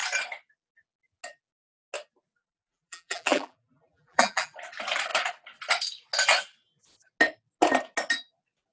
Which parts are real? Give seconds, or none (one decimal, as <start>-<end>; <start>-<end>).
0.0-2.4; 4.5-8.7